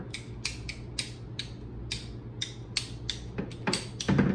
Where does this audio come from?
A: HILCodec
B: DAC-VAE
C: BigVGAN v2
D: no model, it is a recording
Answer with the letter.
D